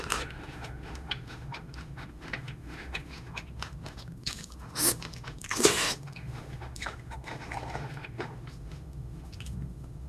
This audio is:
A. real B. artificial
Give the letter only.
B